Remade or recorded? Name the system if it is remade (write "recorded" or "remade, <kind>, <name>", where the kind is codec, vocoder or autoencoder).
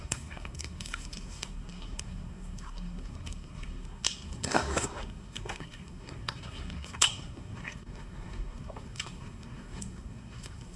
remade, codec, SNAC